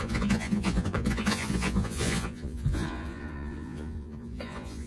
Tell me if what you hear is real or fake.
fake